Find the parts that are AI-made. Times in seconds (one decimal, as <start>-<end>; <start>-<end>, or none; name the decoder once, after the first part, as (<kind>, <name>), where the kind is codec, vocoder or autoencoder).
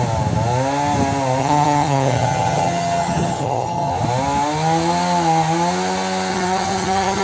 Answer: 1.4-3.9 (vocoder, HiFi-GAN); 6.3-7.2